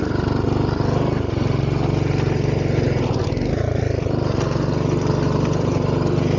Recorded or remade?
recorded